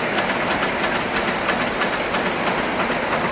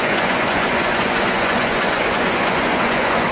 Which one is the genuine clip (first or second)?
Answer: first